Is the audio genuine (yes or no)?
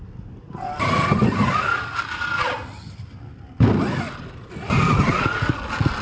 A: yes